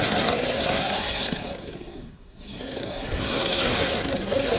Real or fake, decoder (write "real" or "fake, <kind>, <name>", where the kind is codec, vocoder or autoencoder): fake, codec, SNAC